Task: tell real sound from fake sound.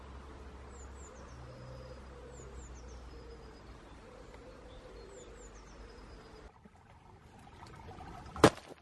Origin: real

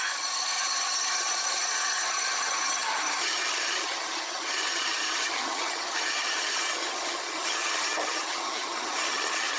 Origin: fake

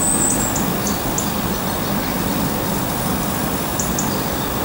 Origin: real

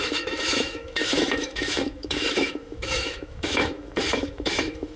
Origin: fake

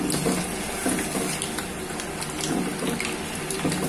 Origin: real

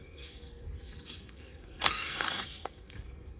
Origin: fake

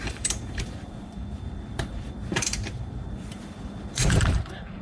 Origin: fake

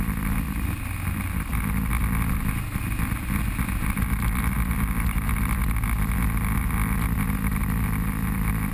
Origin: real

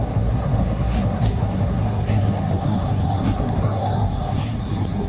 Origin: fake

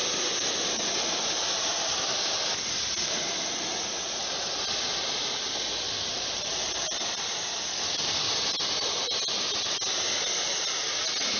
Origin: real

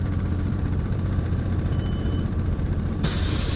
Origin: fake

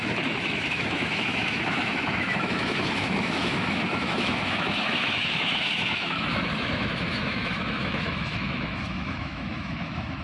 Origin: fake